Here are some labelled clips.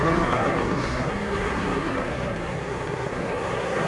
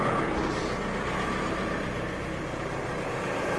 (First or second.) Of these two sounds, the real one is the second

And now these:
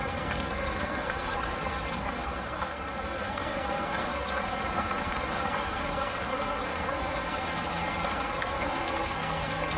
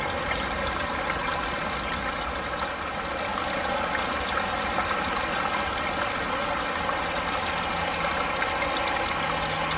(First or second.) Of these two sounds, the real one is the second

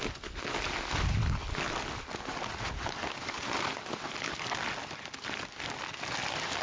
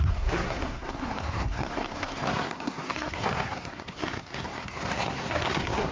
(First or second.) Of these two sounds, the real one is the first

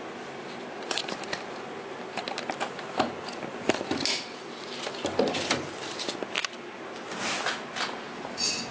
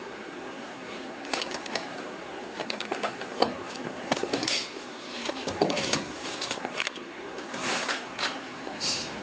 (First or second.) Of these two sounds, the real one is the first